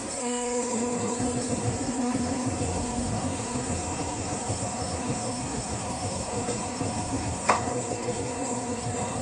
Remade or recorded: remade